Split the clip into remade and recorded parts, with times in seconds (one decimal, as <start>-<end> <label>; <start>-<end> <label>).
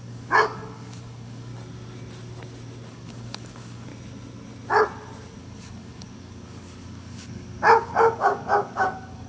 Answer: 0.0-1.5 remade; 1.5-2.9 recorded; 2.9-3.9 remade; 3.9-5.4 recorded; 5.4-9.3 remade